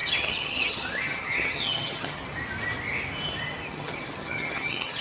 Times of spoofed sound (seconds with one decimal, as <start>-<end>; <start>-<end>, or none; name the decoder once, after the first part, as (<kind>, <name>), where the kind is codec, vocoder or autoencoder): 0.0-2.2 (vocoder, HiFi-GAN); 3.7-5.0